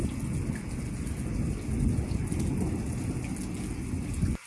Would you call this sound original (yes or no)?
yes